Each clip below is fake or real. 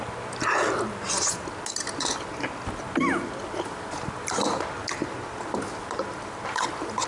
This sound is real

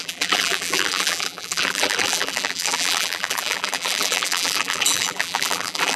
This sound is fake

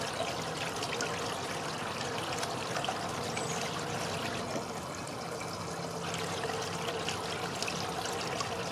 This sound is real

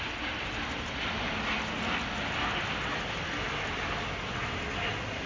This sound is real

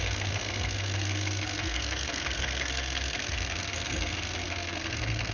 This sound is fake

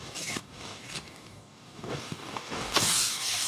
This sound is fake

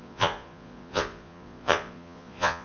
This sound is fake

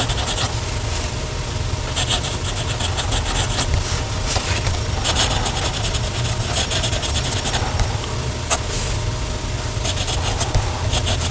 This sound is real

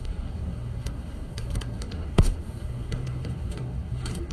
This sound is fake